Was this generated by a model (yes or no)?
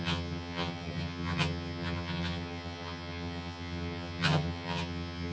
yes